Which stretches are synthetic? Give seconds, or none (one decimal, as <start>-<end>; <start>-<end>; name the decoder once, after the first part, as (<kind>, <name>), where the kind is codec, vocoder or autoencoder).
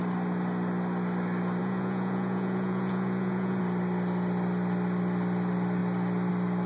1.6-3.6 (vocoder, Vocos)